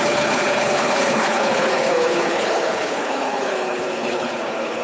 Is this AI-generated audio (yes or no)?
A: yes